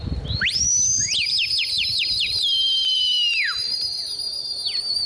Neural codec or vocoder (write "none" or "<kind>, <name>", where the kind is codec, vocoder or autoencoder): vocoder, BigVGAN v2